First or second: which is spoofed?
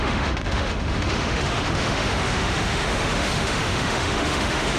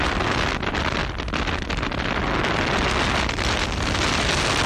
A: first